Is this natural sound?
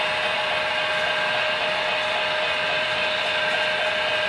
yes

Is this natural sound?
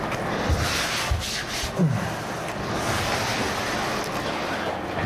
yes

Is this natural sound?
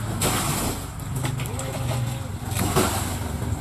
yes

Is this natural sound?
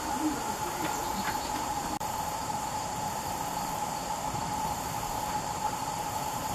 no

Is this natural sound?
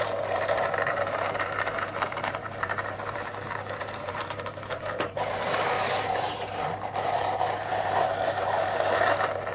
no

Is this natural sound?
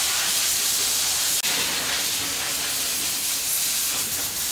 yes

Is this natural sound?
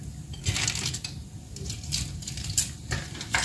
yes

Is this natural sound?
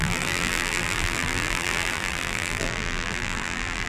no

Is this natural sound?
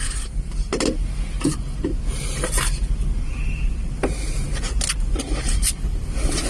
yes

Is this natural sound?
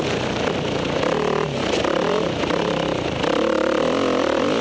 no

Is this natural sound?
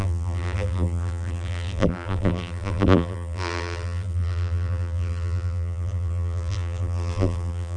no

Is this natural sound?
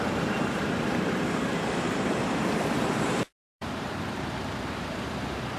no